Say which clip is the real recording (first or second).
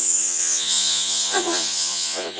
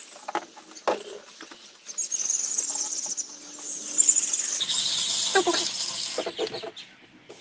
second